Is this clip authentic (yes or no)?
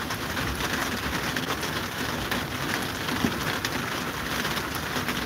yes